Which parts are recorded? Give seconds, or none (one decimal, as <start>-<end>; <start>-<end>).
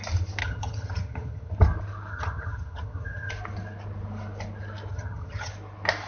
0.0-0.4; 1.5-2.1; 3.3-4.9; 5.5-6.1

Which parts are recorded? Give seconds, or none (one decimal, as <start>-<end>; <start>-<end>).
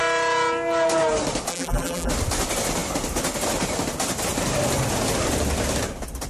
0.0-1.5; 2.1-6.3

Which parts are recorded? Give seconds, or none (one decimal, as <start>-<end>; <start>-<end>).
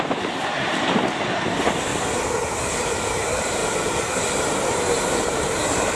1.9-2.8; 3.6-4.9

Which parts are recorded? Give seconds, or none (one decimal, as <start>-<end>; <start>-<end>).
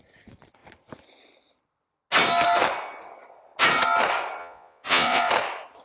0.0-4.4; 5.3-5.8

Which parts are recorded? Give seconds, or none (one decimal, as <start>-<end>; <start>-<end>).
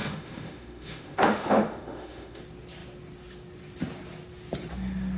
2.4-5.2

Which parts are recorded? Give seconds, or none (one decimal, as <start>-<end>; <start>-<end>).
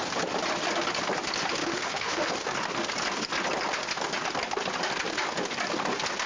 0.0-1.6; 2.3-6.3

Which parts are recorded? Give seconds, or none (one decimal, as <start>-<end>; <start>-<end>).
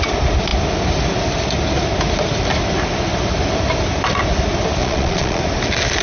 0.0-4.8; 5.4-6.0